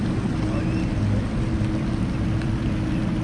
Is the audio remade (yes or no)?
no